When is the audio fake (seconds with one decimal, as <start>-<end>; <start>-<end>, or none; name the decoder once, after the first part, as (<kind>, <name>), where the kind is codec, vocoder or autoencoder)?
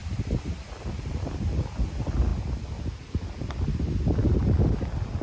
none